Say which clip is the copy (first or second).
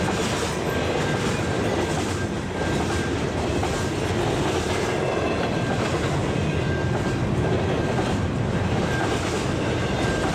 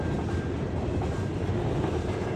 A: second